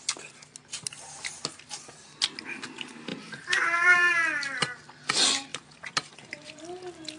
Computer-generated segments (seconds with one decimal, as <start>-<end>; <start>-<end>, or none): 3.1-4.1; 5.5-6.6